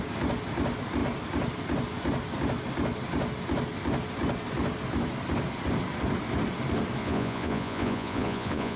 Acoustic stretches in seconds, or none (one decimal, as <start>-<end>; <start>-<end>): 0.0-7.0